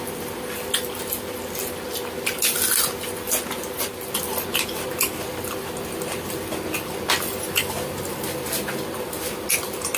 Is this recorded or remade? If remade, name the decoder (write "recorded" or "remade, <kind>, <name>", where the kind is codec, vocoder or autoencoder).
recorded